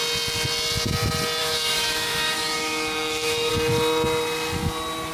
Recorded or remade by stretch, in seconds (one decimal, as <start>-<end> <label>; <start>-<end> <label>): 0.0-1.4 recorded; 1.4-3.5 remade; 3.5-5.1 recorded